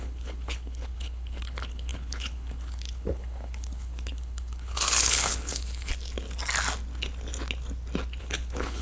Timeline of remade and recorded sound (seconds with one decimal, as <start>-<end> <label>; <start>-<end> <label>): 0.0-5.9 remade; 5.9-8.2 recorded; 8.2-8.8 remade